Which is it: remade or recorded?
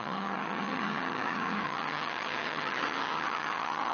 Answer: remade